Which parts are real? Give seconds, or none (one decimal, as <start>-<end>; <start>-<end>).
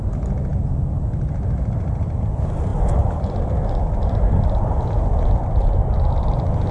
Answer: 0.0-6.7